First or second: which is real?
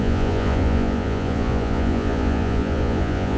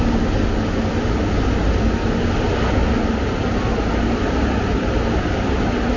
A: second